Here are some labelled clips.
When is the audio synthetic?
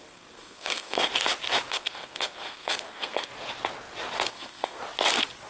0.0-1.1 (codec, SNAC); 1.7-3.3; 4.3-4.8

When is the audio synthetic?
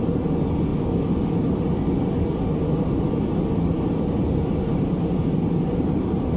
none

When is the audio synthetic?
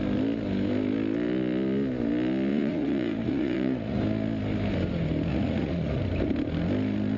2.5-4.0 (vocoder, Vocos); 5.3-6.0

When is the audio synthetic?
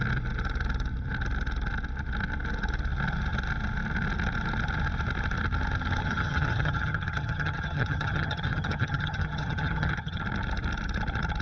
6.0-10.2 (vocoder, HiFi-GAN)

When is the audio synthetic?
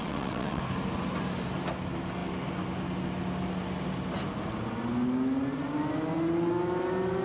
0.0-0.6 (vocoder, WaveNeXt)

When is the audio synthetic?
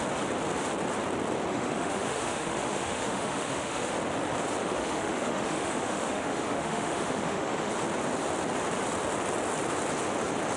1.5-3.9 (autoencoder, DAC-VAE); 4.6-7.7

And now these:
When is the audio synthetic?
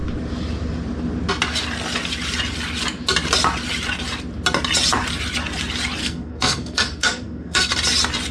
6.0-7.7 (codec, SNAC)